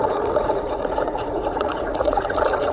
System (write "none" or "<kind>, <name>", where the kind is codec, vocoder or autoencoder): vocoder, Vocos